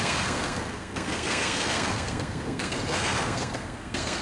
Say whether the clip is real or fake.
fake